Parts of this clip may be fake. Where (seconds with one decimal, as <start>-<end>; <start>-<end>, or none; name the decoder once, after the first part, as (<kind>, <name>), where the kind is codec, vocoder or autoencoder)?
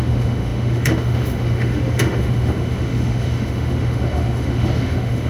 0.0-5.3 (autoencoder, DAC-VAE)